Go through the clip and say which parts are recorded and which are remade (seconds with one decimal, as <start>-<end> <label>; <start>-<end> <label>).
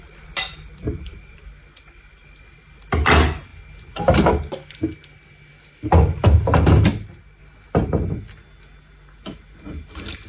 0.0-10.3 recorded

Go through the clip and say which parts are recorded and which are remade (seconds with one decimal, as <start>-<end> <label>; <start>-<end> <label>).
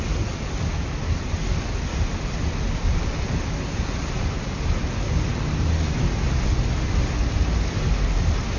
0.0-8.6 recorded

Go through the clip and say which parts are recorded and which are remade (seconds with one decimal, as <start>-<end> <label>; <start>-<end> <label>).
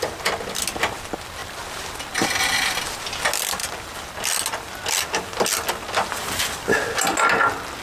0.0-7.8 recorded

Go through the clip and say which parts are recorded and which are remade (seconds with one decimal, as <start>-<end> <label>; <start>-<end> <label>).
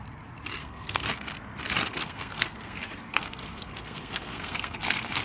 0.0-0.6 recorded; 0.6-1.1 remade; 1.1-1.9 recorded; 1.9-5.2 remade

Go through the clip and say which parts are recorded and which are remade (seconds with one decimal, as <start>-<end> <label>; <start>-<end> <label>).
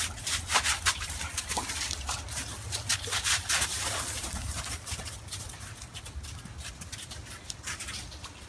0.0-8.5 recorded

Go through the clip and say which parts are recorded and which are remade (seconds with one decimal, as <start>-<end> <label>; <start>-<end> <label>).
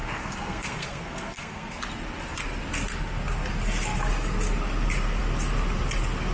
0.0-1.8 remade; 1.8-6.3 recorded